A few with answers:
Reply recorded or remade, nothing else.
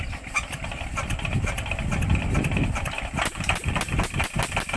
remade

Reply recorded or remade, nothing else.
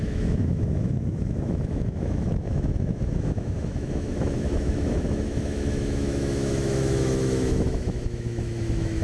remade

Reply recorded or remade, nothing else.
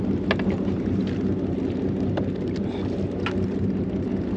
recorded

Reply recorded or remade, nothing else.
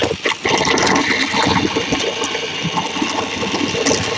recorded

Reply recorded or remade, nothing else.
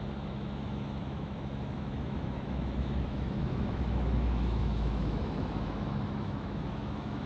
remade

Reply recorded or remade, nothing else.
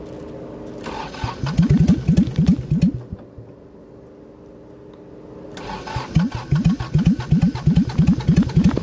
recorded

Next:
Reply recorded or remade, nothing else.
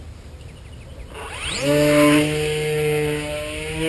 recorded